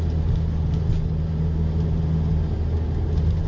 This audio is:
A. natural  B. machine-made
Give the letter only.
A